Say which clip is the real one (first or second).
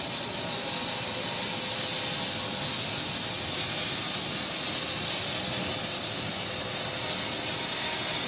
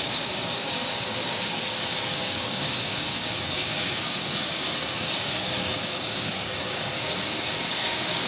first